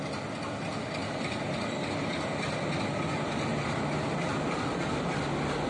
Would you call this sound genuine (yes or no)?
yes